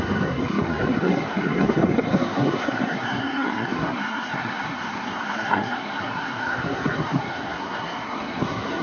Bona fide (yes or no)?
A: no